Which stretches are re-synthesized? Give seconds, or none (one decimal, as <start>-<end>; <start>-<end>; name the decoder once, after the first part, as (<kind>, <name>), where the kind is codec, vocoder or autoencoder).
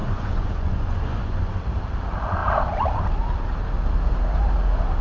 0.0-1.6 (vocoder, Vocos)